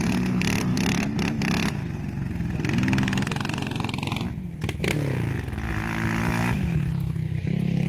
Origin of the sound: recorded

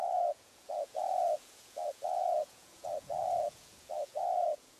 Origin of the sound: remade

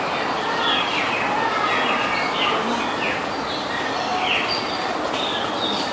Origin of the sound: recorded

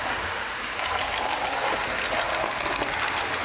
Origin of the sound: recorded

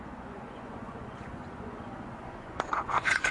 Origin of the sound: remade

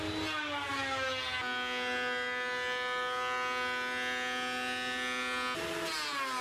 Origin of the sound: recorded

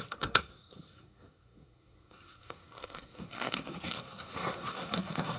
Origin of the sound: remade